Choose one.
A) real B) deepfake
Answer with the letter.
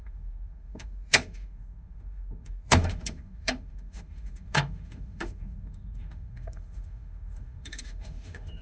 B